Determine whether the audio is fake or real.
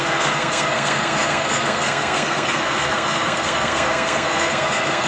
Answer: fake